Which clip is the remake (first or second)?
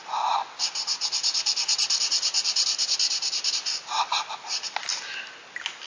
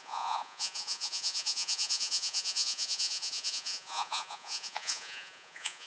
second